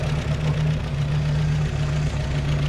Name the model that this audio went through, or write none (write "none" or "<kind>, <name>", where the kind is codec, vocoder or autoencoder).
none